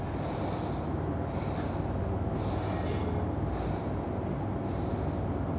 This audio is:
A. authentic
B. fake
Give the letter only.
A